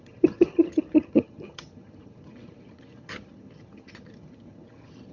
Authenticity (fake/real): fake